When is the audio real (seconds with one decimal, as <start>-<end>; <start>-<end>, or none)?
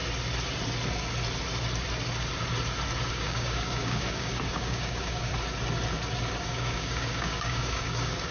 0.0-3.1; 5.3-6.4